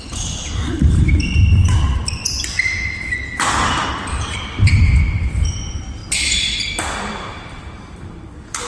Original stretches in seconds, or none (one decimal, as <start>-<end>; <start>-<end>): 2.0-4.1; 6.0-6.8